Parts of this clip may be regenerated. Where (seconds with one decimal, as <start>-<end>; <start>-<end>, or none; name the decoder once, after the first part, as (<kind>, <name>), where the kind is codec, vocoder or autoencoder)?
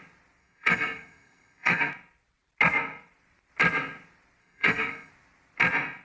0.4-1.9 (codec, SNAC); 4.4-5.1